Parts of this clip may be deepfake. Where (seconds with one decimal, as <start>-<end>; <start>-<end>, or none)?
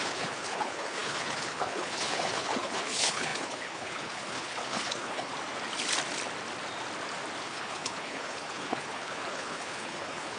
0.0-5.3; 7.4-10.4